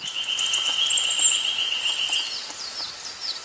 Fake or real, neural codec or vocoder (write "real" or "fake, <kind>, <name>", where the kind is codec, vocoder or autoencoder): real